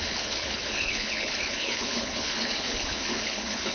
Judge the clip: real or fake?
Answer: fake